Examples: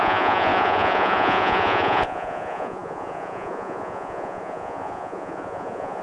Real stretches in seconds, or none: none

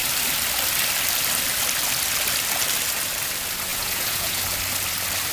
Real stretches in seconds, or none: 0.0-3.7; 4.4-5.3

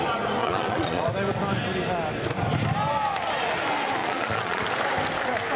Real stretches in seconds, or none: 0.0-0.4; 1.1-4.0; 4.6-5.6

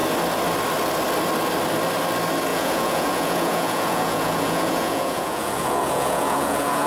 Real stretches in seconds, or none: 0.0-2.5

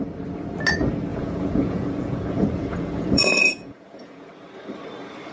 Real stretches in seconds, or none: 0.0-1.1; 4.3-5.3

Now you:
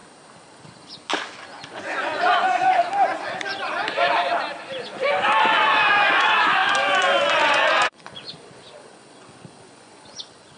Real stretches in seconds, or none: 0.0-1.7; 2.8-5.4; 6.6-7.4

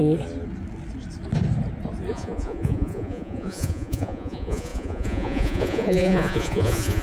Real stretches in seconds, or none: 0.0-2.1